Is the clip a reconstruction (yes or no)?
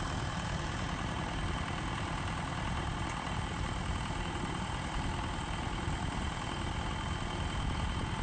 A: yes